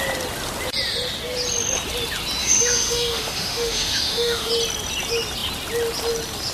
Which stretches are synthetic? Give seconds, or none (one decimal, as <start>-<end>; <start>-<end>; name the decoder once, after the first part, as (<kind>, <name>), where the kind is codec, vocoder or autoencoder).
2.4-4.5 (autoencoder, DAC-VAE)